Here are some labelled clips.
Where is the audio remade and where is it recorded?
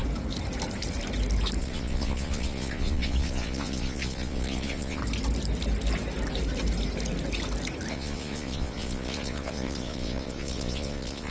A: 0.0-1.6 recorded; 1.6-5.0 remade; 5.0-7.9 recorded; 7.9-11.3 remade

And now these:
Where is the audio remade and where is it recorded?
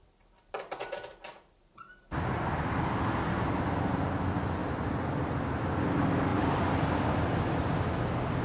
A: 0.0-4.6 recorded; 4.6-5.4 remade; 5.4-6.3 recorded; 6.3-7.8 remade; 7.8-8.4 recorded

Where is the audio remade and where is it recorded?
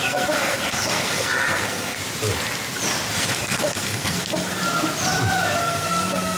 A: 0.0-2.0 remade; 2.0-3.1 recorded; 3.1-4.6 remade; 4.6-5.6 recorded; 5.6-6.4 remade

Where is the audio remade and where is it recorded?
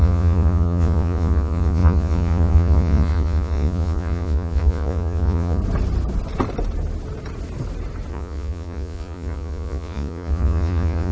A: 0.0-5.6 remade; 5.6-8.1 recorded; 8.1-11.1 remade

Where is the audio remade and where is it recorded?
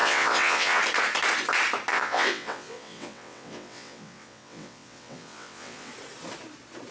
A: 0.0-0.8 remade; 0.8-1.9 recorded; 1.9-5.9 remade; 5.9-6.9 recorded